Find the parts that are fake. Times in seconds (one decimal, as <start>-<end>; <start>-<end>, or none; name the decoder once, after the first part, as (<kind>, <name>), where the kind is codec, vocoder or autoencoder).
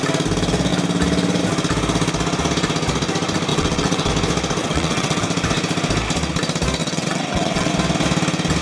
3.5-4.1 (vocoder, WaveNeXt); 4.6-5.2; 6.8-7.7